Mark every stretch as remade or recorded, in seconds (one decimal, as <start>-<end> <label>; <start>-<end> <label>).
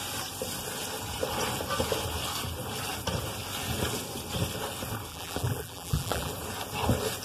0.0-5.1 recorded; 5.1-6.3 remade; 6.3-7.2 recorded